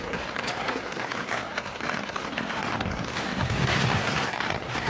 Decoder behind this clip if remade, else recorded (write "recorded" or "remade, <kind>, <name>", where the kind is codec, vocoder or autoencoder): remade, codec, SNAC